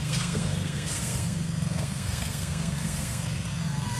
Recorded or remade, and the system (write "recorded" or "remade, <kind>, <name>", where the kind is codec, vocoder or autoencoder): remade, codec, SNAC